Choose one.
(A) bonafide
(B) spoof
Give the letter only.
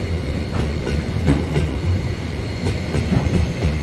B